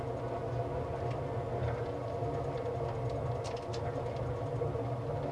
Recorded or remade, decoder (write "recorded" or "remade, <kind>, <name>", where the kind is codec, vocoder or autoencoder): recorded